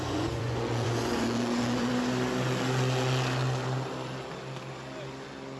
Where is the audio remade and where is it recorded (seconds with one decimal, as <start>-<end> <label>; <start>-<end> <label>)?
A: 0.0-1.9 remade; 1.9-5.6 recorded